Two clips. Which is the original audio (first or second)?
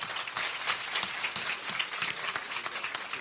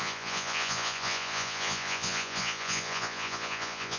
first